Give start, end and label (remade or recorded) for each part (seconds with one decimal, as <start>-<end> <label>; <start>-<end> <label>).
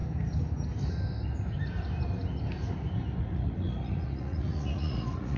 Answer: 0.0-3.2 recorded; 3.2-5.4 remade